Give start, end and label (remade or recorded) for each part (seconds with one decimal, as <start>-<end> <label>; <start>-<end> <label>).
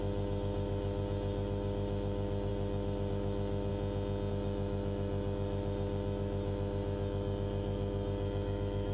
0.0-3.7 remade; 3.7-4.3 recorded; 4.3-8.9 remade